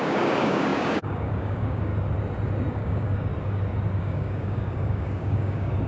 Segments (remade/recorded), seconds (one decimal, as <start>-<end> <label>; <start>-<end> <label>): 0.0-1.9 remade; 1.9-2.7 recorded; 2.7-3.3 remade; 3.3-4.0 recorded; 4.0-5.9 remade